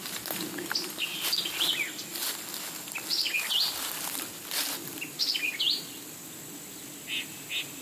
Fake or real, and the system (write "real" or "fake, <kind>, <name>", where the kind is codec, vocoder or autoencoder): real